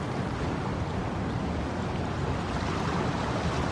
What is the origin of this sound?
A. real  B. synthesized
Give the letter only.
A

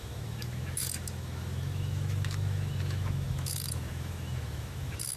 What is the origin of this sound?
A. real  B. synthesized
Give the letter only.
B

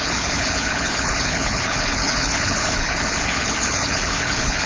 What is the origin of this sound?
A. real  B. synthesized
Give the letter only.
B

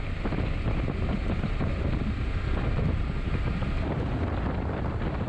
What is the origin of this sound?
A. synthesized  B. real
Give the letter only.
B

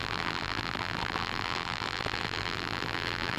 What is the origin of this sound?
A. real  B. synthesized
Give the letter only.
B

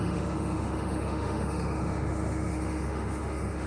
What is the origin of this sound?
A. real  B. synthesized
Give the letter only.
B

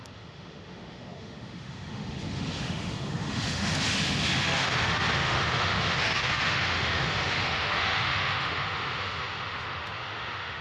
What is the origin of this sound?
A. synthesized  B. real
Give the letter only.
A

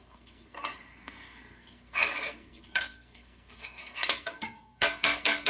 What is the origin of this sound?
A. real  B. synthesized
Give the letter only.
B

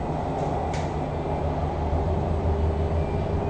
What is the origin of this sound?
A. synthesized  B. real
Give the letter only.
B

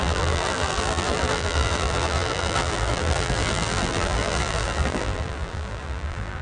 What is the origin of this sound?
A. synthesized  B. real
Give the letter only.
A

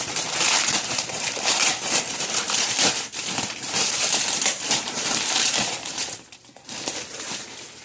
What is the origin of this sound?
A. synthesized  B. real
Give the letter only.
A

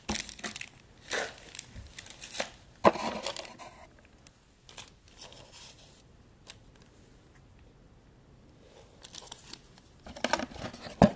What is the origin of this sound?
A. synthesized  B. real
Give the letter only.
B